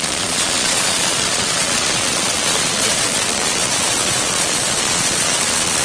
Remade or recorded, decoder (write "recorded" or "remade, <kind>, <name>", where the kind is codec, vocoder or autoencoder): remade, vocoder, Vocos